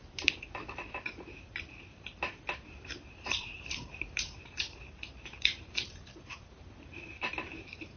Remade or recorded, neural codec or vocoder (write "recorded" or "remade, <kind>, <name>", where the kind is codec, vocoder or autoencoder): remade, vocoder, BigVGAN v2